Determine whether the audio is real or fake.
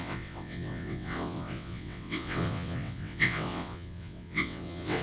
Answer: fake